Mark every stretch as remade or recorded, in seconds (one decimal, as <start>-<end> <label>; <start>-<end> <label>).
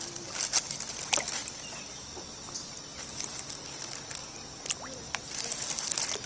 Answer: 0.0-6.3 recorded